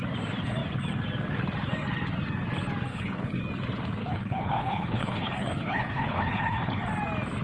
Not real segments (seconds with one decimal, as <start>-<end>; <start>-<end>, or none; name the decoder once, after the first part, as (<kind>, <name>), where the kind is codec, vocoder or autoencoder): 2.9-3.4 (codec, HILCodec); 4.0-6.8